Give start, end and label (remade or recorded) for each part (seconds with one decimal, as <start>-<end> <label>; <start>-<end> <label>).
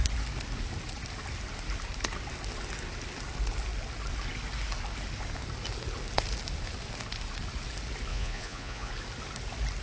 0.0-8.1 recorded; 8.1-8.9 remade; 8.9-9.8 recorded